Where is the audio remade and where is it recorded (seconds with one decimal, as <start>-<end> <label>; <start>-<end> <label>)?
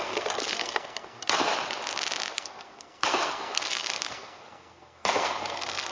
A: 0.0-1.5 remade; 1.5-2.3 recorded; 2.3-5.9 remade